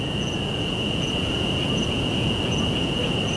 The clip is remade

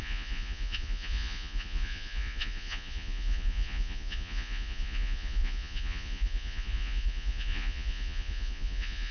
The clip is remade